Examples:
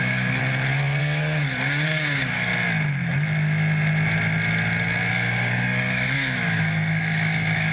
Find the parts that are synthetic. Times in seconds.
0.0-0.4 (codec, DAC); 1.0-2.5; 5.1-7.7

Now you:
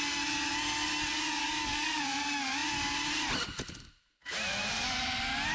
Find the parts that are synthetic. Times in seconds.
1.4-2.0 (codec, DAC)

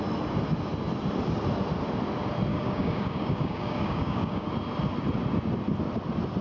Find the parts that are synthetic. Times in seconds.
2.5-4.5 (codec, DAC)

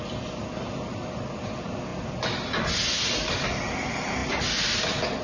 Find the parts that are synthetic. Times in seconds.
none

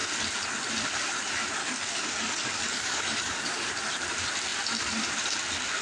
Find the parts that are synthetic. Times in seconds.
1.6-3.7 (codec, DAC)